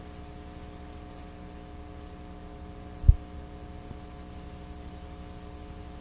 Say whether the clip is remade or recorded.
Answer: recorded